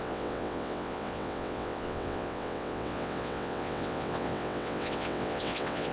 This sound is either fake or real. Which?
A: fake